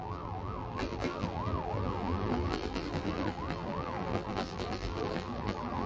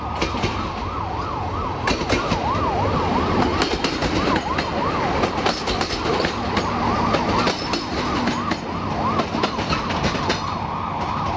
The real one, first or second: second